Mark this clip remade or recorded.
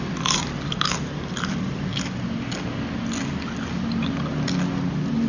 recorded